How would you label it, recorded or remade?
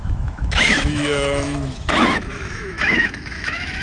remade